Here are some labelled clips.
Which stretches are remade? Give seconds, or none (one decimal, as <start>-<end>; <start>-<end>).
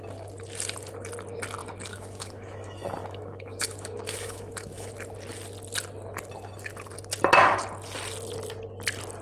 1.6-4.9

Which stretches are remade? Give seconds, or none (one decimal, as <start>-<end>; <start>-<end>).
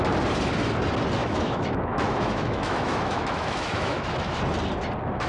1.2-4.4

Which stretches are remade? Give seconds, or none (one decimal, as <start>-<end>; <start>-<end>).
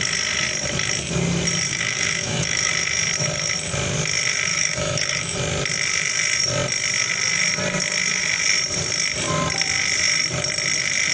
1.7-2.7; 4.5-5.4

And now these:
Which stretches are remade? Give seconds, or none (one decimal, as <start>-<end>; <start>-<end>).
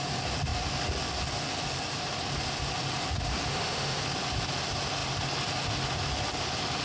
3.5-4.0